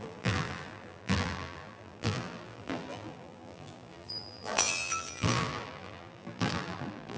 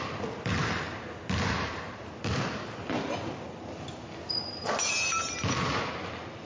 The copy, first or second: first